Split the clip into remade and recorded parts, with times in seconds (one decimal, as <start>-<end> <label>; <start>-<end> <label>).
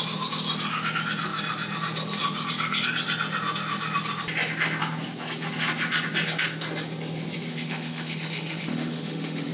0.0-7.5 recorded; 7.5-9.5 remade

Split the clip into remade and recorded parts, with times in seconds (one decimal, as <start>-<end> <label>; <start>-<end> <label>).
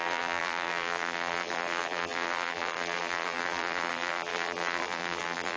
0.0-5.6 remade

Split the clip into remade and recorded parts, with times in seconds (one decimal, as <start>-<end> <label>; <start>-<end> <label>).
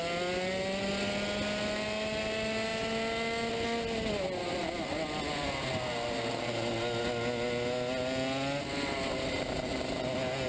0.0-10.5 recorded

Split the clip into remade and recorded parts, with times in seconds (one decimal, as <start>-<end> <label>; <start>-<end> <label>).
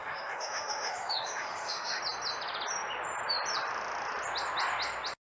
0.0-2.0 remade; 2.0-5.3 recorded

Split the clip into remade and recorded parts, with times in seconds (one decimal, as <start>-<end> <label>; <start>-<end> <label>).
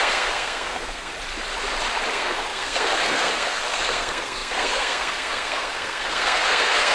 0.0-1.1 remade; 1.1-2.1 recorded; 2.1-6.9 remade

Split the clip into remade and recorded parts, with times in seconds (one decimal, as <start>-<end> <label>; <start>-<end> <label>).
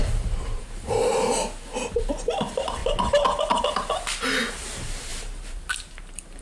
0.0-2.8 remade; 2.8-4.5 recorded; 4.5-6.4 remade